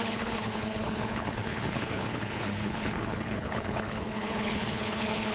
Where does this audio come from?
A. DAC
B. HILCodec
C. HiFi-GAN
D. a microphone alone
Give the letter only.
B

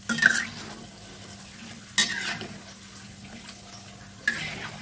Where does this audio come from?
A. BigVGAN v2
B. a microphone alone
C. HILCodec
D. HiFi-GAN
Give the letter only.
B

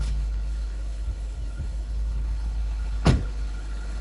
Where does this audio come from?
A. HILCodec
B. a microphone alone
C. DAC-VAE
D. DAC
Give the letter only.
A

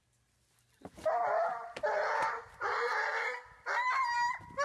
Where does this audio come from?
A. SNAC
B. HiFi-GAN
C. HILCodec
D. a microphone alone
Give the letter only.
D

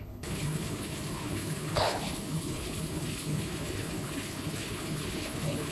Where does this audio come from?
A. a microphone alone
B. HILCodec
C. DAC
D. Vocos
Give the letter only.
B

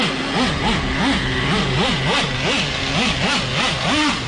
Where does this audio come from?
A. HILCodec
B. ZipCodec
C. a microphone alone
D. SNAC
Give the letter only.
C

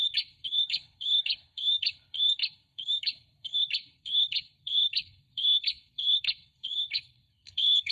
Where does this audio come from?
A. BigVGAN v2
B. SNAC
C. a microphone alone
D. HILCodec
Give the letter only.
D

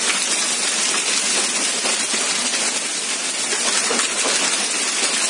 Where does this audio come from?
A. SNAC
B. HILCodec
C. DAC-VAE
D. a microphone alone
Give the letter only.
D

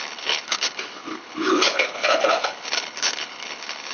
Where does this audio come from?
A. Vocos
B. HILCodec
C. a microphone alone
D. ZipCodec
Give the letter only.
B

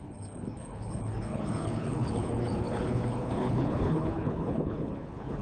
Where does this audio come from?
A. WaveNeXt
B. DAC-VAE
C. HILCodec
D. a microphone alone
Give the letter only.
C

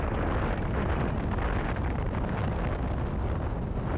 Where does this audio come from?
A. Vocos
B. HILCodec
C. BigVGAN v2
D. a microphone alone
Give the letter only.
D